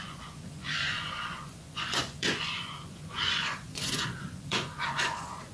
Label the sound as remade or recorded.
remade